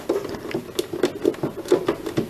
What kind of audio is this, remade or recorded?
recorded